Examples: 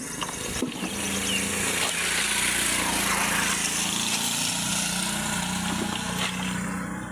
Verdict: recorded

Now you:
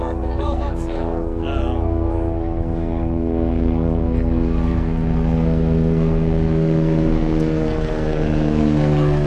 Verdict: remade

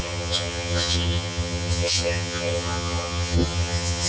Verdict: remade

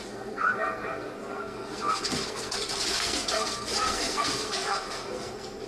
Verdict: remade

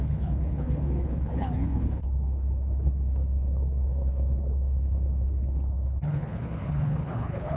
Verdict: remade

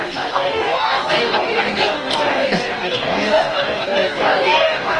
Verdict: remade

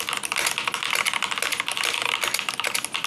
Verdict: recorded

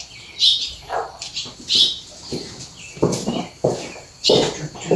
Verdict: recorded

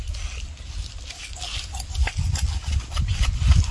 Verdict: recorded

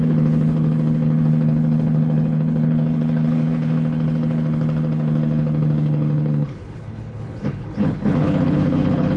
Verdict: remade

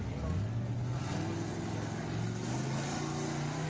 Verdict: recorded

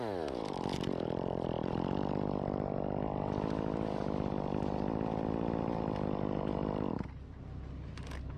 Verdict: recorded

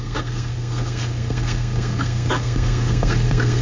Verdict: remade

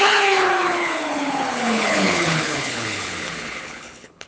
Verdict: remade